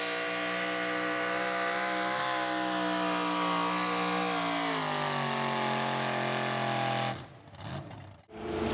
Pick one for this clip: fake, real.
real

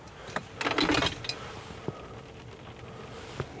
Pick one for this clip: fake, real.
real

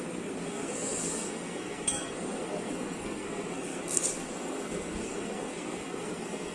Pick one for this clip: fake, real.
fake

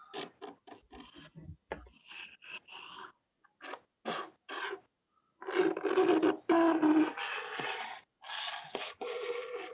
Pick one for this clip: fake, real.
real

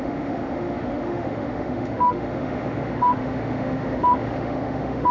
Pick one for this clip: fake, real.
fake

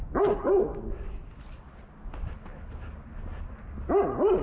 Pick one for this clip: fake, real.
real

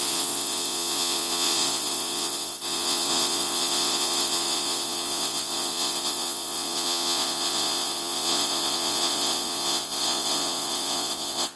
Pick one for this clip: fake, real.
fake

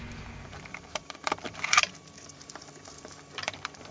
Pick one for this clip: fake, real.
fake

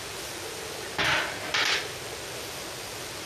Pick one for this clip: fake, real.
real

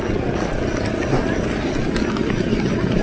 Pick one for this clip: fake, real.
real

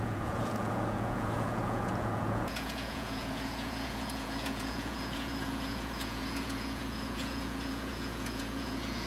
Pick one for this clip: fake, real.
fake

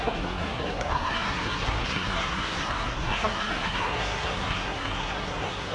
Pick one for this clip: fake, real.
fake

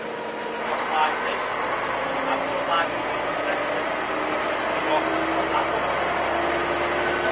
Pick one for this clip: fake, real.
real